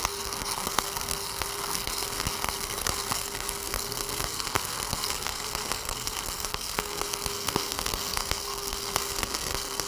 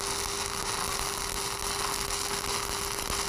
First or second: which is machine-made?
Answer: first